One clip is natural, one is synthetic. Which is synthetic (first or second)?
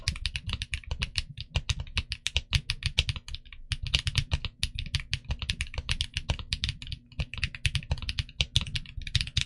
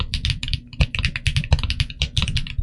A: second